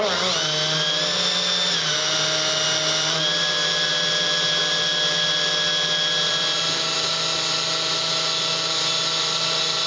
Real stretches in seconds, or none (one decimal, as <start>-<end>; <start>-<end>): 0.0-9.9